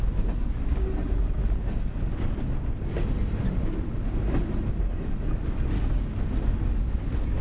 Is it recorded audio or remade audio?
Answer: recorded